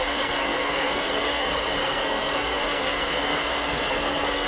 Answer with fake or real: fake